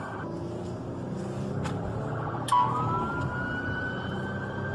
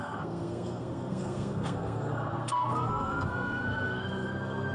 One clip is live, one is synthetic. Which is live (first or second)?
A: first